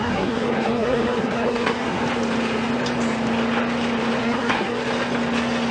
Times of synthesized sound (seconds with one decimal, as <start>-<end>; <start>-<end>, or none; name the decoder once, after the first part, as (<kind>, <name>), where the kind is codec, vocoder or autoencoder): 0.0-2.0 (codec, SNAC); 4.2-4.8